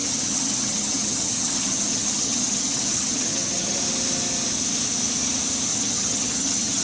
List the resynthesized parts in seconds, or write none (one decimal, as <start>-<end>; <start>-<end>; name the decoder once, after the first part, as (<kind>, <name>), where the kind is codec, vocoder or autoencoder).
0.0-3.8 (vocoder, HiFi-GAN); 5.7-6.8